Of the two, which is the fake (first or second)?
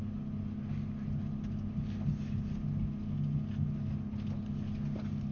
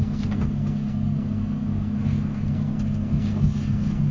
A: second